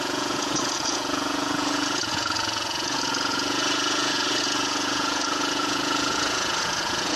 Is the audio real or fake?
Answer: fake